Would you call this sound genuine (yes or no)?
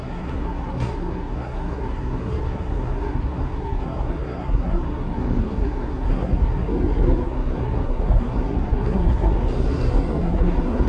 no